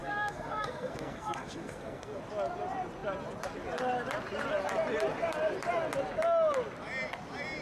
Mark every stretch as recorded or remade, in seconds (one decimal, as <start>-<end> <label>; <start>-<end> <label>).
0.0-2.2 remade; 2.2-7.6 recorded